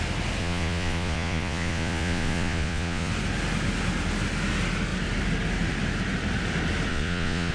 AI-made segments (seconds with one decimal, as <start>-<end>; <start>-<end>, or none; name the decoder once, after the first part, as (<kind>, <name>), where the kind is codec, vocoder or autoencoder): 0.4-3.1 (vocoder, Vocos); 6.9-7.5